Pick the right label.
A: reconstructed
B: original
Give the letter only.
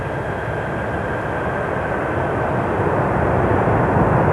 B